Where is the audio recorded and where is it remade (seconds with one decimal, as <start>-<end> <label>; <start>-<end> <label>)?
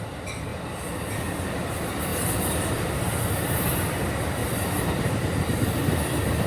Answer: 0.0-0.5 remade; 0.5-1.7 recorded; 1.7-2.1 remade; 2.1-2.7 recorded; 2.7-6.5 remade